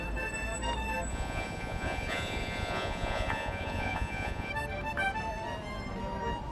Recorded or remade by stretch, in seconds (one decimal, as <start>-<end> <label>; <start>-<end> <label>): 0.0-1.1 recorded; 1.1-4.5 remade; 4.5-6.5 recorded